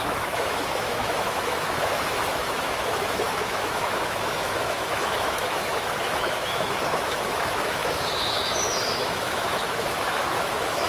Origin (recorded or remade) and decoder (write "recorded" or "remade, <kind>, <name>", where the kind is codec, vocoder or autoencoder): remade, autoencoder, DAC-VAE